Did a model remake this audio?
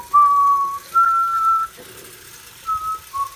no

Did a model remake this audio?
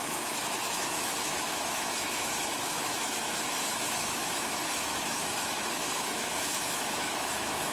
yes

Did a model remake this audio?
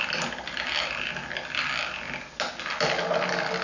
no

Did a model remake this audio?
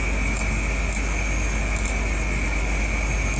no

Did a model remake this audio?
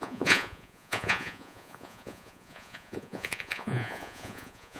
yes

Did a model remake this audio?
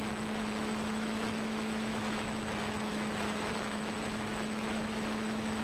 yes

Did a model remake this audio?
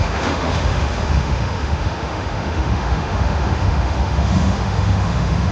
yes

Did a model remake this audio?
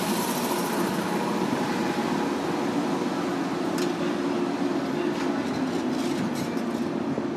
no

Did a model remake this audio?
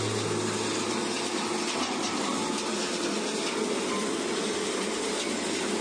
no